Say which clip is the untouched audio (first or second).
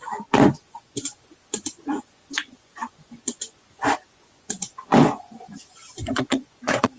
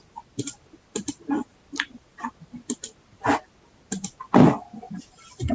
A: second